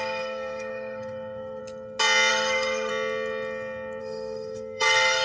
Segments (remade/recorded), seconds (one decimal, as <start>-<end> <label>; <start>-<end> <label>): 0.0-1.6 remade; 1.6-2.3 recorded; 2.3-2.9 remade; 2.9-4.0 recorded; 4.0-5.2 remade